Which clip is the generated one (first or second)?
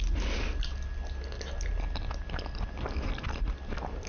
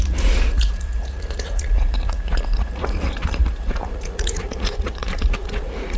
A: second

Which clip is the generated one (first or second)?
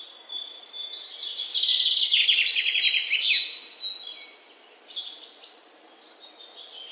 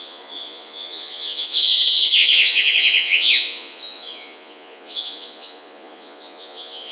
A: second